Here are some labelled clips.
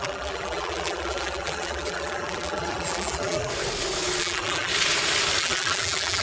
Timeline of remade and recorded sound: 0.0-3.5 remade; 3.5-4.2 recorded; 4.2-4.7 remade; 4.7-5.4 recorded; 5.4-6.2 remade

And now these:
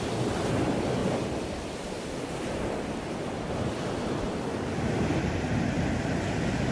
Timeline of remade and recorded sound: 0.0-1.0 recorded; 1.0-2.2 remade; 2.2-4.5 recorded; 4.5-5.5 remade; 5.5-6.7 recorded

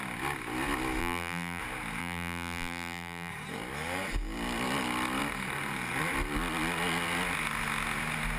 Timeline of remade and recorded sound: 0.0-1.0 recorded; 1.0-1.6 remade; 1.6-2.0 recorded; 2.0-3.3 remade; 3.3-8.4 recorded

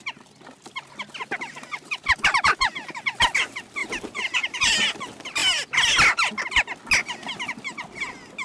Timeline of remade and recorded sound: 0.0-1.5 recorded; 1.5-2.8 remade; 2.8-3.8 recorded; 3.8-4.7 remade; 4.7-8.4 recorded

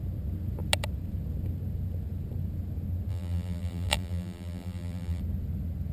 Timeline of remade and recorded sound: 0.0-3.1 recorded; 3.1-5.2 remade; 5.2-5.9 recorded

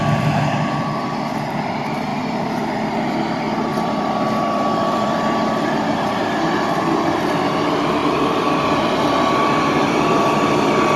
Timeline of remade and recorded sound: 0.0-2.1 recorded; 2.1-2.7 remade; 2.7-3.7 recorded; 3.7-6.2 remade; 6.2-8.0 recorded; 8.0-10.2 remade; 10.2-11.0 recorded

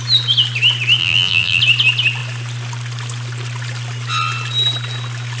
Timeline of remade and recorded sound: 0.0-1.0 recorded; 1.0-1.6 remade; 1.6-5.4 recorded